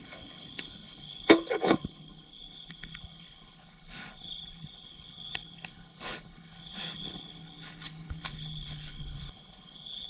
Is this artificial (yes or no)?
yes